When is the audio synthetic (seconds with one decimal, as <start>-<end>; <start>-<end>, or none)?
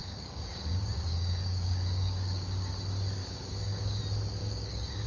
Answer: 0.0-2.7; 3.2-4.0; 4.4-5.1